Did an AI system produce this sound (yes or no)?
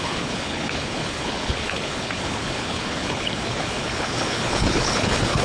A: yes